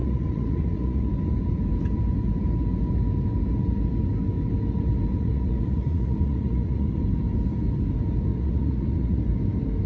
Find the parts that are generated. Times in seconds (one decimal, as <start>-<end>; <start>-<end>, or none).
0.0-1.1; 5.1-7.0; 8.3-9.2